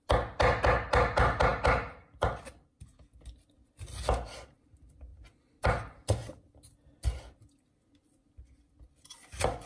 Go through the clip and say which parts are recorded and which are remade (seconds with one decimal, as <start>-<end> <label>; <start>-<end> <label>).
0.0-9.7 recorded